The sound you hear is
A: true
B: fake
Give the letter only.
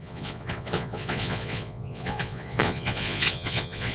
B